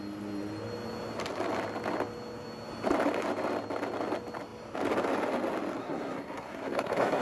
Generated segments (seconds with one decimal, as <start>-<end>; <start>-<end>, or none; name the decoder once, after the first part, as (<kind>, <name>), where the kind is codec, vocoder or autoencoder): 5.8-7.2 (codec, SNAC)